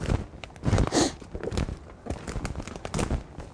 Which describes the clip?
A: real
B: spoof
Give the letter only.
A